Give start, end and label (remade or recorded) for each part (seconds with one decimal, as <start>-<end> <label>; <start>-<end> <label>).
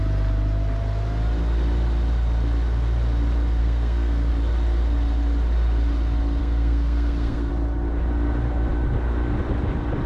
0.0-3.6 recorded; 3.6-4.3 remade; 4.3-6.4 recorded; 6.4-7.5 remade; 7.5-10.1 recorded